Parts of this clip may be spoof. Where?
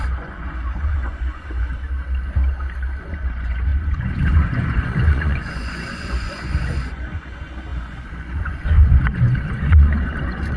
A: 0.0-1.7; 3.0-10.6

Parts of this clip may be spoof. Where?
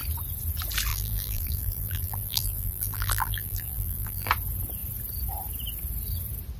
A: 0.9-4.3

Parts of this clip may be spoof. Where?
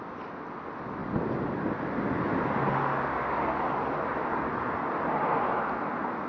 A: none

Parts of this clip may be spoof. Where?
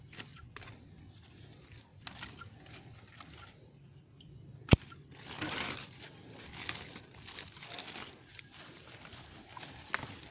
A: none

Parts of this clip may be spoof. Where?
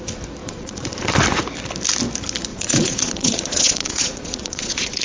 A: 0.4-1.1; 2.5-5.0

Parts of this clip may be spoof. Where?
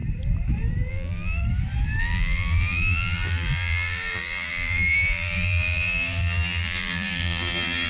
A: 0.9-1.4; 2.0-7.9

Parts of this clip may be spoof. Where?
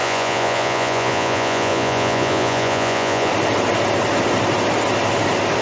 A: 0.0-3.3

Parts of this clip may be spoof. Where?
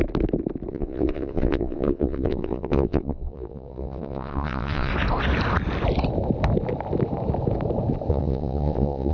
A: 0.7-4.9; 8.1-9.1